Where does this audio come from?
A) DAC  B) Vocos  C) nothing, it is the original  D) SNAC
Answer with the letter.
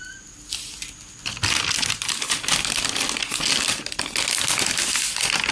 C